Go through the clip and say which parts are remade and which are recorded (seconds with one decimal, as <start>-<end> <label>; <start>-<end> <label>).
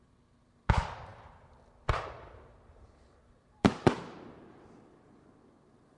0.0-6.0 remade